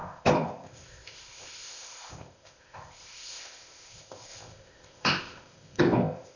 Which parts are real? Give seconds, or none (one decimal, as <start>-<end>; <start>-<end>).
none